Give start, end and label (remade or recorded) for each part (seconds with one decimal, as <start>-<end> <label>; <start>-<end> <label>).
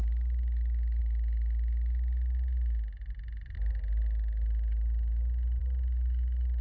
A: 0.0-1.0 remade; 1.0-5.6 recorded; 5.6-6.6 remade